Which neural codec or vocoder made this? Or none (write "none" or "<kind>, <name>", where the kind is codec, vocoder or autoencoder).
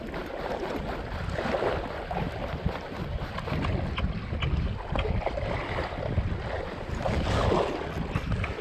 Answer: none